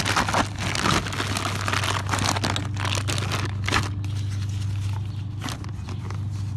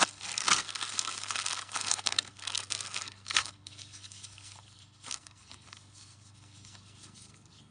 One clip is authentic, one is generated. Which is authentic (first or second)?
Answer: first